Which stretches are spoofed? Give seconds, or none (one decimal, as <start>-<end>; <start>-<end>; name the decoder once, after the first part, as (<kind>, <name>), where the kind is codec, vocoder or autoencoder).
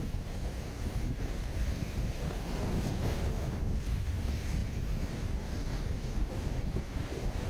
0.0-7.5 (codec, DAC)